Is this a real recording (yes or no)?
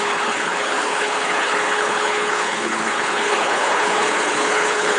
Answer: no